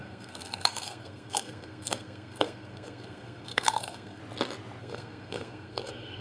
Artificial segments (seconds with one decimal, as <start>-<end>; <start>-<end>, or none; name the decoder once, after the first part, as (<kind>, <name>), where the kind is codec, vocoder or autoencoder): 0.0-4.2 (codec, SNAC); 4.8-6.2